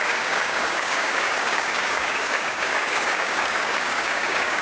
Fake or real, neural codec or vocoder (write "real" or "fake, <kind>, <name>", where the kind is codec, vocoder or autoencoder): fake, codec, DAC